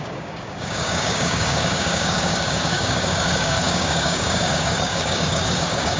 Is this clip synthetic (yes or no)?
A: yes